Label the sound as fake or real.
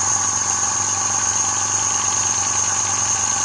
real